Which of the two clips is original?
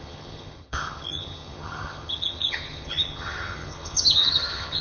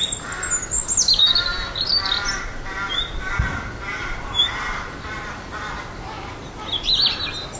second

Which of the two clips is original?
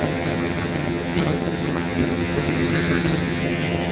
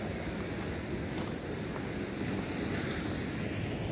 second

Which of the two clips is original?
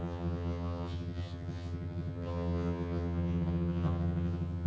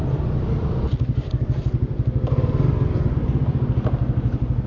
second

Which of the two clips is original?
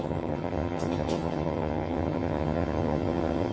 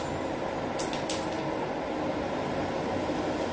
second